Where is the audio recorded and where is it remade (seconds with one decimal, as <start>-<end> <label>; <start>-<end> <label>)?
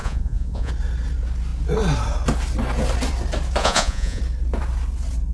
0.0-0.7 remade; 0.7-3.6 recorded; 3.6-4.2 remade; 4.2-5.3 recorded